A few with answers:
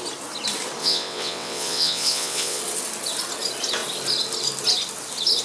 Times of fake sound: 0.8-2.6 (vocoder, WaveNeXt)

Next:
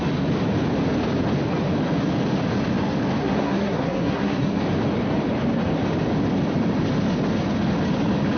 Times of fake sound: 3.2-4.6 (codec, SNAC)